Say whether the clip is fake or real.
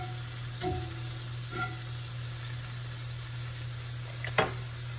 real